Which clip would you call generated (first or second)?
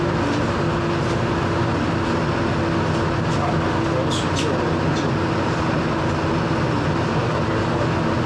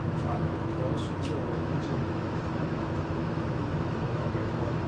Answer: second